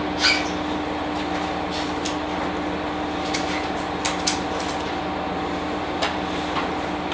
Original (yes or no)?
yes